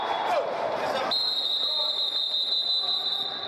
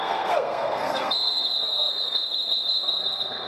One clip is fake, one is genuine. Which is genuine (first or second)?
first